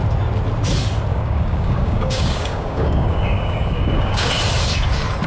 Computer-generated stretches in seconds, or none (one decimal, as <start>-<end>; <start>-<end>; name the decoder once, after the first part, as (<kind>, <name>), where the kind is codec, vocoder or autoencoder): 1.1-4.3 (codec, DAC)